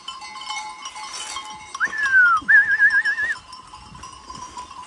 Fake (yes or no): no